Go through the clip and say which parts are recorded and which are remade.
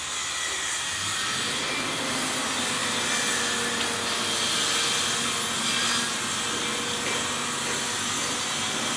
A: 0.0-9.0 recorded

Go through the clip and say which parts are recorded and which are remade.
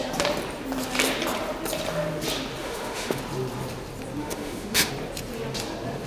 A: 0.0-2.6 recorded; 2.6-3.2 remade; 3.2-4.2 recorded; 4.2-4.9 remade; 4.9-6.1 recorded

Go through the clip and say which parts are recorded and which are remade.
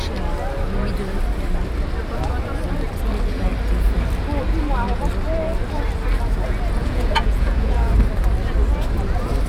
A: 0.0-6.8 recorded; 6.8-7.9 remade; 7.9-9.5 recorded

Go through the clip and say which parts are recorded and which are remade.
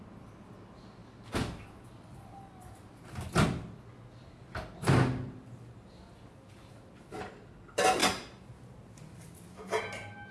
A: 0.0-10.3 recorded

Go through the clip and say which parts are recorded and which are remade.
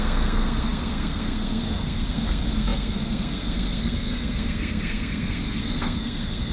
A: 0.0-6.5 remade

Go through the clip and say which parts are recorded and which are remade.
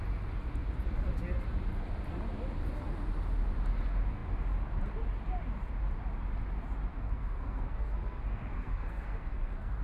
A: 0.0-6.9 recorded; 6.9-9.8 remade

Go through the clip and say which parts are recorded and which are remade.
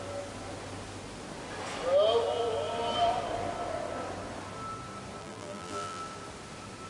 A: 0.0-5.2 recorded; 5.2-6.0 remade; 6.0-6.9 recorded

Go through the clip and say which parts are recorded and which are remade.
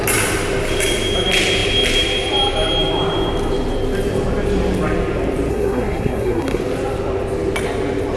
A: 0.0-5.5 recorded; 5.5-6.6 remade; 6.6-8.2 recorded